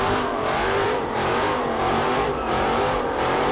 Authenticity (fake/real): fake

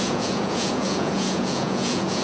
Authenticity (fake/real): fake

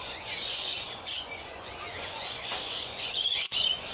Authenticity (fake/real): fake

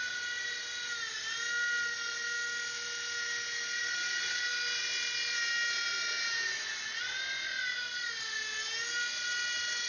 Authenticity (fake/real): real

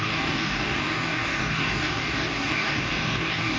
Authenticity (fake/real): fake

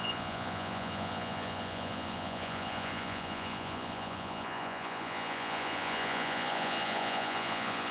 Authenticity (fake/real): fake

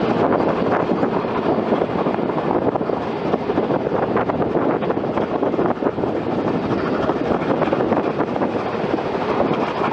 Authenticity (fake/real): real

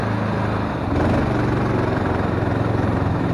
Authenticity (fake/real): real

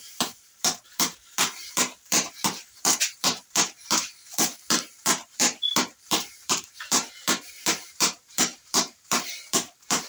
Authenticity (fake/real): fake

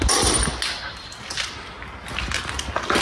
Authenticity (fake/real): real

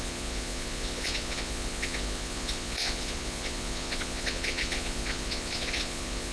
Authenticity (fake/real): fake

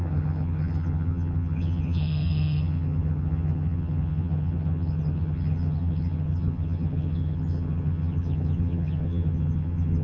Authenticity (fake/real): fake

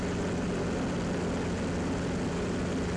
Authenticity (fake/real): real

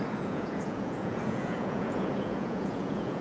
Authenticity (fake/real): fake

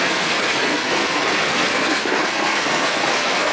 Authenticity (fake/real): fake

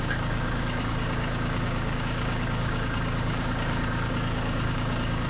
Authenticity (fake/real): fake